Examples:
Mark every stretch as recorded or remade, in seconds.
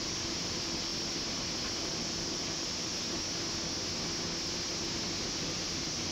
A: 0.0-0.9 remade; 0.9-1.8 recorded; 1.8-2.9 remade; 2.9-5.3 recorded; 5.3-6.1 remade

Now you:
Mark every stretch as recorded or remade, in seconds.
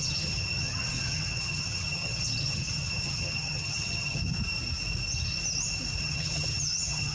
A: 0.0-4.2 remade; 4.2-6.0 recorded; 6.0-7.1 remade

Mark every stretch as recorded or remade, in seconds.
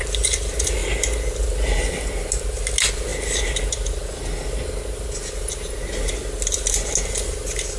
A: 0.0-7.8 recorded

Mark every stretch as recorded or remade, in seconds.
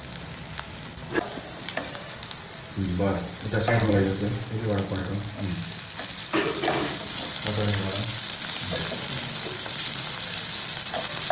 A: 0.0-11.3 recorded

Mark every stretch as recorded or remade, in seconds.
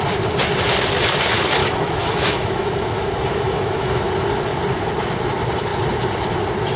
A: 0.0-1.6 recorded; 1.6-4.1 remade; 4.1-6.8 recorded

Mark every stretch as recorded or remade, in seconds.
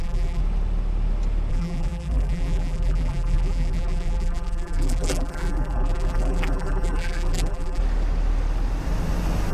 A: 0.0-0.4 remade; 0.4-1.5 recorded; 1.5-7.8 remade; 7.8-9.5 recorded